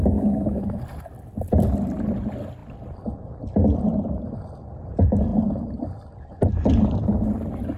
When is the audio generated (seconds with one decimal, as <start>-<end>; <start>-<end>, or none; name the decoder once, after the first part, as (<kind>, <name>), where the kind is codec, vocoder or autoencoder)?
0.0-0.8 (autoencoder, DAC-VAE)